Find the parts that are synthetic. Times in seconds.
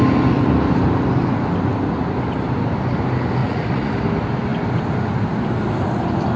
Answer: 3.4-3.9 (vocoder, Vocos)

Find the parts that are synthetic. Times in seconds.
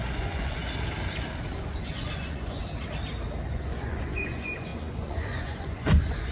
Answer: 0.0-0.6 (vocoder, Vocos); 1.6-2.6; 3.5-6.3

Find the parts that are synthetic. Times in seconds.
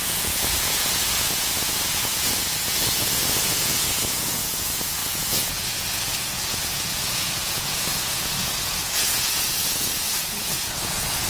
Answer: 0.0-11.3 (vocoder, Vocos)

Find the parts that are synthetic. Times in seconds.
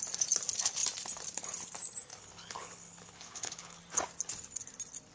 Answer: 2.1-3.8 (codec, HILCodec)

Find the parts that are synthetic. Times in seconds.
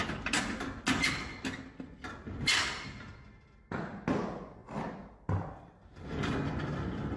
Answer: none